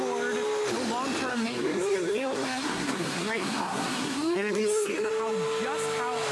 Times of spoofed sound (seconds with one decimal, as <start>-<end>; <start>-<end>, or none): 1.3-5.1